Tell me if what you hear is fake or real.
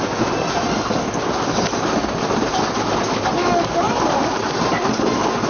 real